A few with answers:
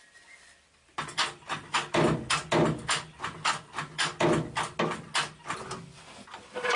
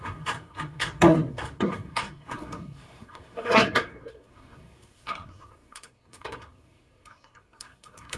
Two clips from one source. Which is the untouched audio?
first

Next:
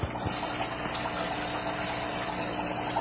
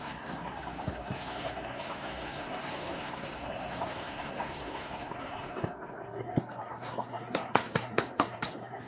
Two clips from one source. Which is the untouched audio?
first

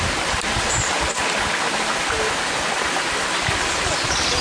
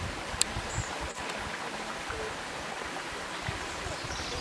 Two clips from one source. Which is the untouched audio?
first